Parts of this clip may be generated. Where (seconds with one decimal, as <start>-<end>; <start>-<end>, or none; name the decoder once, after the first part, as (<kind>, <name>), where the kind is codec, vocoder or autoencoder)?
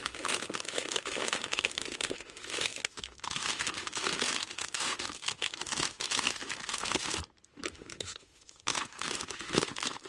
0.0-7.2 (autoencoder, DAC-VAE); 7.7-10.1